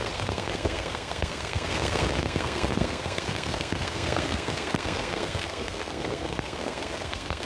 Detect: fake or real fake